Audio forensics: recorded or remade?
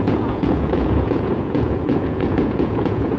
remade